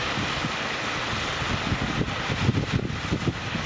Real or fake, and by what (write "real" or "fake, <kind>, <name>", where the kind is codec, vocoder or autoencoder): real